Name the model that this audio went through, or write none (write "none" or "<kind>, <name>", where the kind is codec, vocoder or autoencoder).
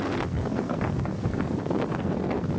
codec, SNAC